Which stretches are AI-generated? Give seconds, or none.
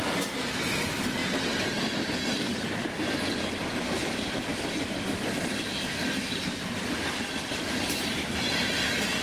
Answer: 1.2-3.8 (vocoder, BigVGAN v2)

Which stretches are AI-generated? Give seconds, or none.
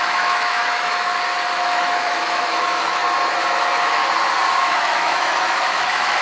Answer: 0.0-1.1 (autoencoder, DAC-VAE); 1.6-3.0; 3.6-4.0; 4.6-6.2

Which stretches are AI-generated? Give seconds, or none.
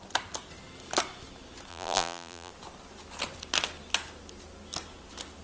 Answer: 1.7-2.5 (vocoder, BigVGAN v2)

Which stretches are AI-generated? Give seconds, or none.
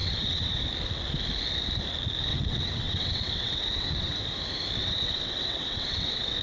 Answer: 0.0-0.7 (vocoder, WaveNeXt); 2.3-4.2; 4.8-6.4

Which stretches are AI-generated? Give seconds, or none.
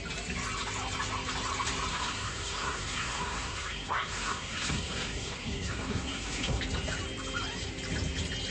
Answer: 1.9-6.6 (codec, SNAC)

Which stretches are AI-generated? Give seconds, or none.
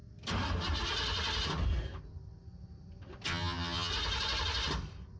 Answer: 3.3-3.9 (vocoder, HiFi-GAN)